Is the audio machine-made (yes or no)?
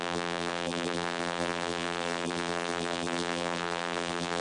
yes